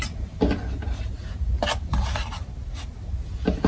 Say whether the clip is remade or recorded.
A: recorded